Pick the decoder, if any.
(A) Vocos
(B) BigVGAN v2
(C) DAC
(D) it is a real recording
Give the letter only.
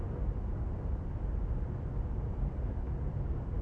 B